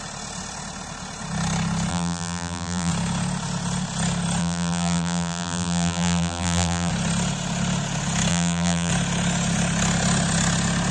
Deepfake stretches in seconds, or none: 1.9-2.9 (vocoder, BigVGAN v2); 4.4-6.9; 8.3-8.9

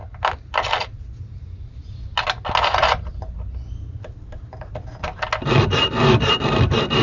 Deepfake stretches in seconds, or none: none

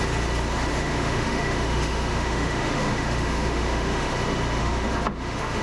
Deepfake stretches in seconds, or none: 0.7-4.1 (autoencoder, DAC-VAE); 4.6-5.6

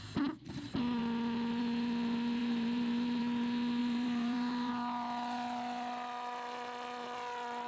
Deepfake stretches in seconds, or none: 2.4-3.2 (vocoder, BigVGAN v2); 3.8-4.7

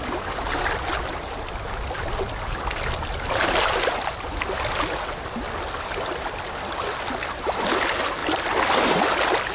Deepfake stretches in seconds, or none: none

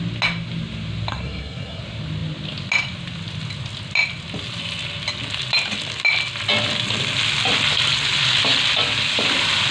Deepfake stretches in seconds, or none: 1.1-1.8 (codec, SNAC)

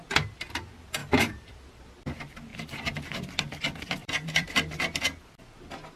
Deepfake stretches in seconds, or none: 1.0-1.7 (vocoder, BigVGAN v2); 4.0-4.5

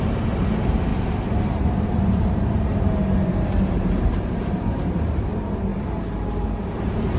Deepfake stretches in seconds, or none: 0.9-5.2 (vocoder, BigVGAN v2)